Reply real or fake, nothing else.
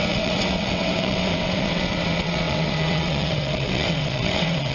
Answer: fake